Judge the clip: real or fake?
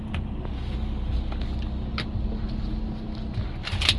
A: real